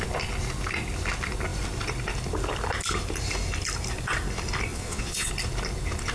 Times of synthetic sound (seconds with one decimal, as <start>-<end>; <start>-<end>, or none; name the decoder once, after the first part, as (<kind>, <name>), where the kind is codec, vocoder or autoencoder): 4.7-5.3 (vocoder, Vocos)